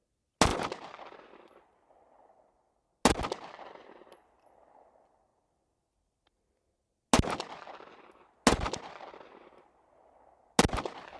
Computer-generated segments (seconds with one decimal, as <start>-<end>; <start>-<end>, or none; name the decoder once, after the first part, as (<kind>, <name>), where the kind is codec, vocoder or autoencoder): none